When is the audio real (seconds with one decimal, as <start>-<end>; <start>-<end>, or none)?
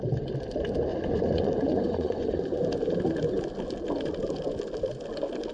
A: 0.0-0.9; 2.6-5.5